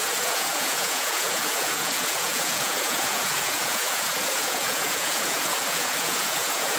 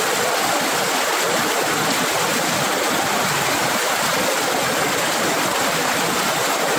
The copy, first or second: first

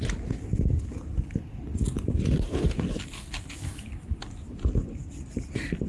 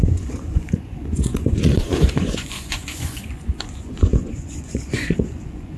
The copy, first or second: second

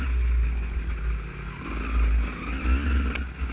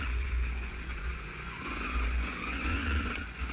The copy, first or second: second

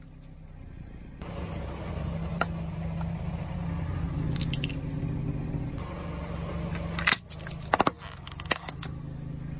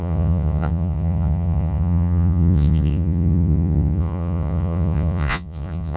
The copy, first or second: second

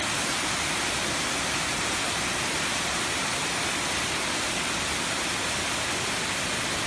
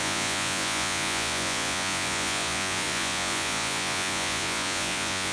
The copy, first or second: second